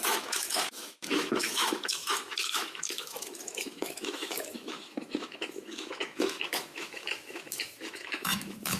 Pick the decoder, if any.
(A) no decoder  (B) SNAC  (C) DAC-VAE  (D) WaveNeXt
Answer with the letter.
C